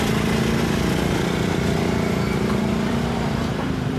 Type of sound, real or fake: fake